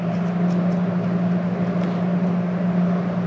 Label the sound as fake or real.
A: real